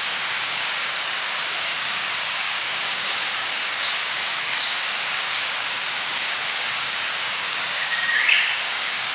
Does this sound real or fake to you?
fake